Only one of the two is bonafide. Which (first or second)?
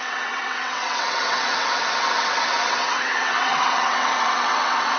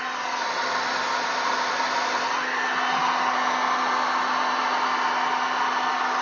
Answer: second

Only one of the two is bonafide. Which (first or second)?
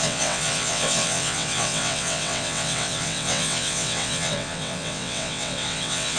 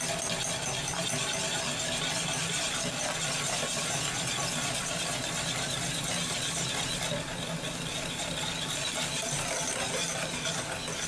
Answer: second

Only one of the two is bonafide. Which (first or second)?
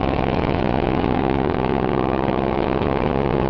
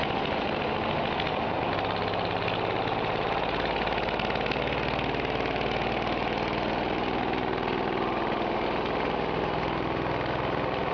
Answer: second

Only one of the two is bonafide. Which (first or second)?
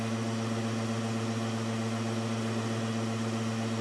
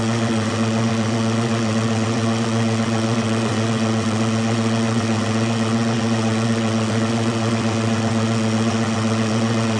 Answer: first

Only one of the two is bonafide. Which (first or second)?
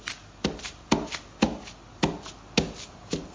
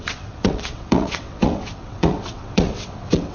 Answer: first